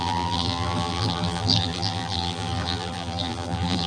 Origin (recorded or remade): remade